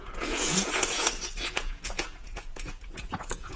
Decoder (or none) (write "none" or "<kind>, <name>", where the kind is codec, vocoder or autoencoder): vocoder, Vocos